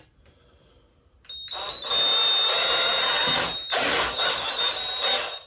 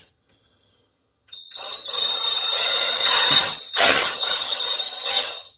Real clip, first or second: first